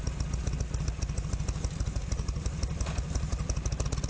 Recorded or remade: recorded